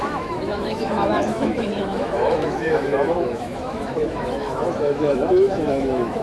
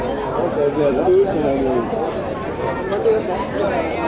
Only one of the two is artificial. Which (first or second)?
first